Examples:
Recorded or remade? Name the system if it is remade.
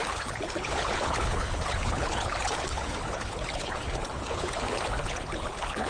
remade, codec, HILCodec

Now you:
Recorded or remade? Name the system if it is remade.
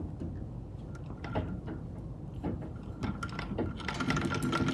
recorded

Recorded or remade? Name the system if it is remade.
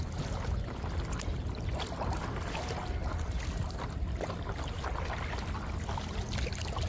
recorded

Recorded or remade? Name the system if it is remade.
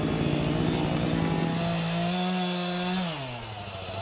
recorded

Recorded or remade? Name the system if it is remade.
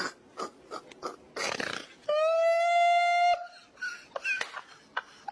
recorded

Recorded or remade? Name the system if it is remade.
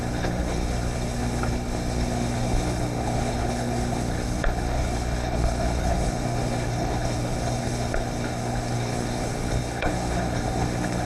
remade, codec, HILCodec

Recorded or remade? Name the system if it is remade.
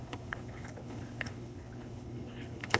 remade, codec, HILCodec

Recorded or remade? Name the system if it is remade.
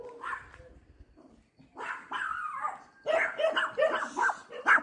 recorded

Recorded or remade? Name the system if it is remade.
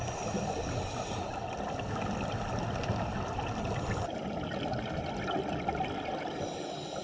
recorded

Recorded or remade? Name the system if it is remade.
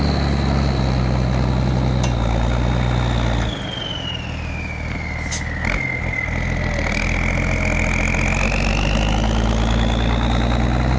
recorded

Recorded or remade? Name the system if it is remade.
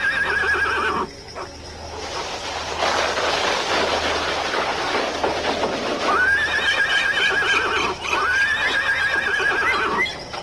recorded